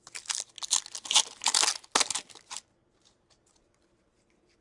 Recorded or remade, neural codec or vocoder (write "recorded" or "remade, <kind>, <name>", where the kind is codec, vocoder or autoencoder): recorded